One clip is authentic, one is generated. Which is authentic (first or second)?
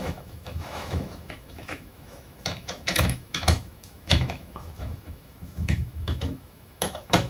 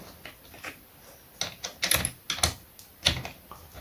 second